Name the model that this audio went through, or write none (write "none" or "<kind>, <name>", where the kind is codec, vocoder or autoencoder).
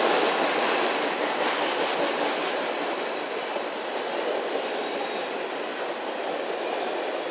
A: none